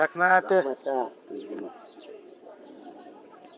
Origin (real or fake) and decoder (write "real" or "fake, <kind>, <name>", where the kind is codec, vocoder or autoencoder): fake, vocoder, WaveNeXt